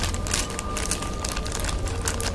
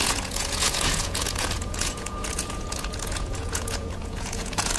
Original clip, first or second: first